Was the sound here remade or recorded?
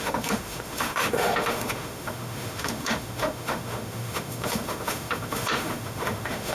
remade